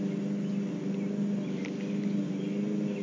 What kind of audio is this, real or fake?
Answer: real